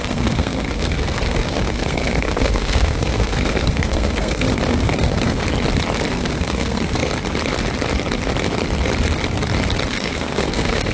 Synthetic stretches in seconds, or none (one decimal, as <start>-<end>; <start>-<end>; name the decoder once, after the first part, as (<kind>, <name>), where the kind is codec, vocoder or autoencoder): 0.0-5.4 (codec, SNAC); 6.1-7.1; 9.9-10.9